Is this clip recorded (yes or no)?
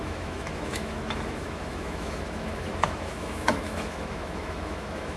no